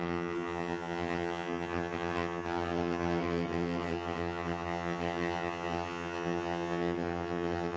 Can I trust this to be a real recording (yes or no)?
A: no